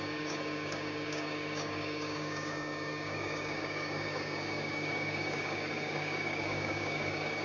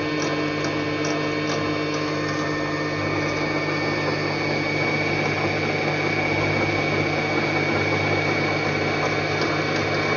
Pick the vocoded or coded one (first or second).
first